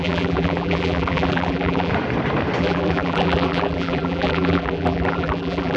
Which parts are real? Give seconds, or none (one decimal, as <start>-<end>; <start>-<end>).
1.9-2.6

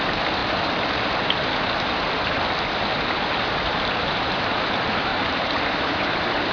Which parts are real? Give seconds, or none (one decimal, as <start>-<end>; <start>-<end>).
0.0-5.1

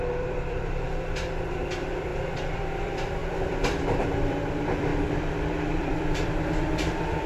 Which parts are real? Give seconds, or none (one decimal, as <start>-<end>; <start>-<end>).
none

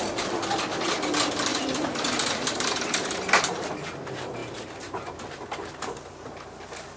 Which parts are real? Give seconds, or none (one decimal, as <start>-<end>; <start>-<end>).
0.0-1.5; 3.7-4.4; 5.2-7.0

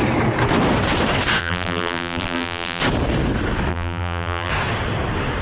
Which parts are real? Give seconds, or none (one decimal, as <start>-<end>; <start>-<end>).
0.0-1.4; 2.8-3.7; 4.5-5.4

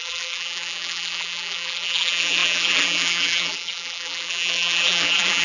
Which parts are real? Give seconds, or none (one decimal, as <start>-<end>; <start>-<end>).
none

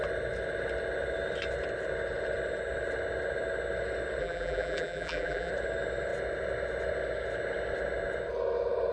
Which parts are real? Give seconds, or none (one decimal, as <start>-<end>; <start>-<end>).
0.0-4.2; 5.5-8.9

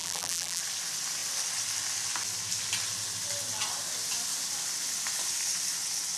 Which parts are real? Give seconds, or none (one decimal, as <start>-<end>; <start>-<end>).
0.6-6.2